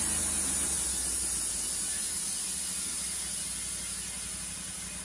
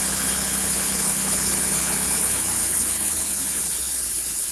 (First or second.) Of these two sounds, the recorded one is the first